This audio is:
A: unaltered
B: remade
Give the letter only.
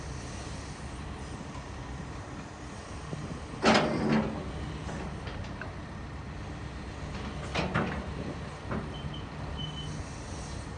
A